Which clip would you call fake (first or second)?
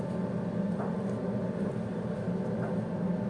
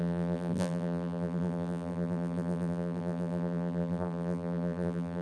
second